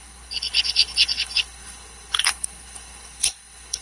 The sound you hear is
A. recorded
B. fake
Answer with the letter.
B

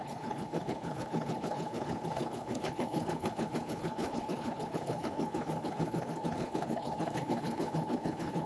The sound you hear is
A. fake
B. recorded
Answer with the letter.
A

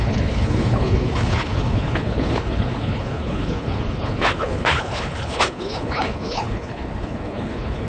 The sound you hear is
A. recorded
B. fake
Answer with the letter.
B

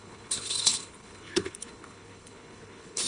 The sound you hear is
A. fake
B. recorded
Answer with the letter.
A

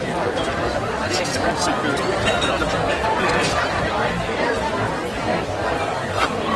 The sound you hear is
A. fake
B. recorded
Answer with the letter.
B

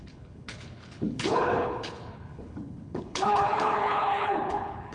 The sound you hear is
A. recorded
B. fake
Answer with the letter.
B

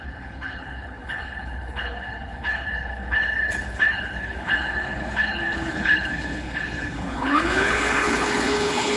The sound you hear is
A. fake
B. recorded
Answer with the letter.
A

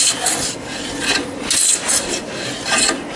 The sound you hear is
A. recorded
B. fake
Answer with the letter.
A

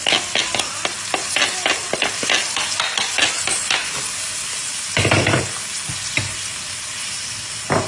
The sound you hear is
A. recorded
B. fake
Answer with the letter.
A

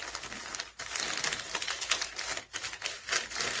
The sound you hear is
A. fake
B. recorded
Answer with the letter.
B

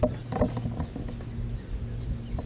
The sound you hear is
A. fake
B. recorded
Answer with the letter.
B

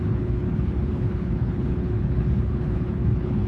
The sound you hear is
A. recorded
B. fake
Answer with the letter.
B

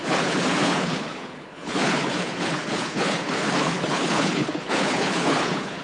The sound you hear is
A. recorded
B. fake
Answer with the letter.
B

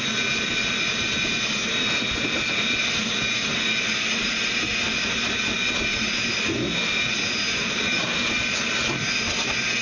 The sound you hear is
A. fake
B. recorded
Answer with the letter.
B